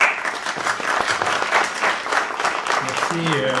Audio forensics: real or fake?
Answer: real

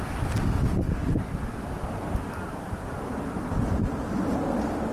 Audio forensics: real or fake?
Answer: real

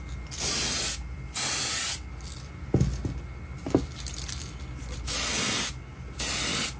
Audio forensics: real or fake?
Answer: real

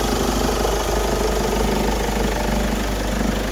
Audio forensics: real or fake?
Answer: real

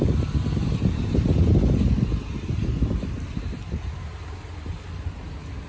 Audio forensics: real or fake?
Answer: real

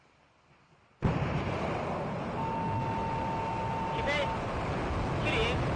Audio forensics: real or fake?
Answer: real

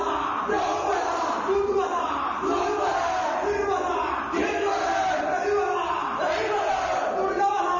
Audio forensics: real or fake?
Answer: real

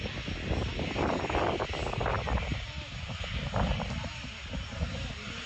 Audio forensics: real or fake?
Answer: real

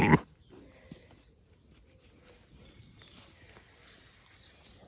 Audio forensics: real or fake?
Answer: real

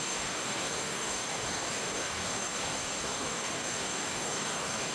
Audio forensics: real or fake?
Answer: fake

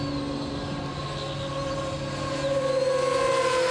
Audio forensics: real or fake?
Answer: real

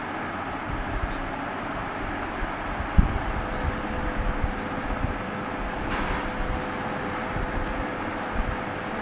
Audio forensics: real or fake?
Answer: real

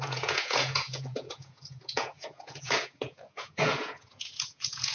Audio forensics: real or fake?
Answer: fake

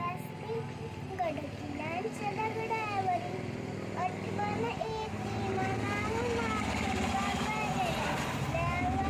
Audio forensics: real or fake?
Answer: real